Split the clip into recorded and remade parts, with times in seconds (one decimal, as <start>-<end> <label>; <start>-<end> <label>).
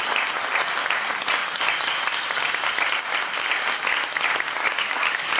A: 0.0-4.6 recorded; 4.6-5.4 remade